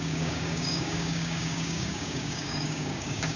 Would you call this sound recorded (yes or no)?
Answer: no